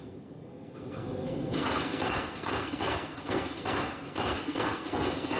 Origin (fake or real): fake